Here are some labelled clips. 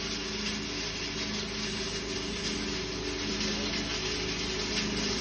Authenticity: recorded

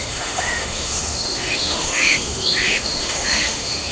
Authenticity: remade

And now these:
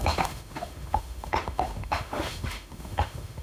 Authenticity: remade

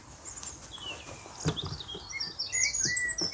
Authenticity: recorded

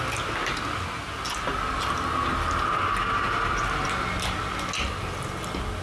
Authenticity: recorded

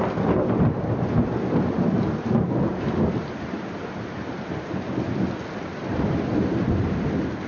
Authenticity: recorded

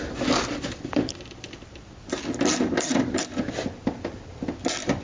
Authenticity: remade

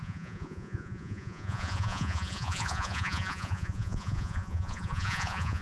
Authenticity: remade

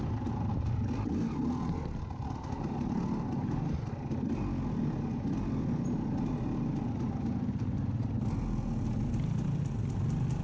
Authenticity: recorded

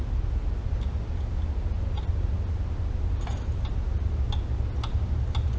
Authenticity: recorded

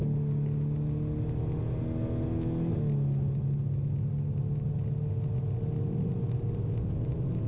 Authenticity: recorded